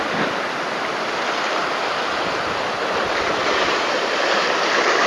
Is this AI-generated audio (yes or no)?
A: no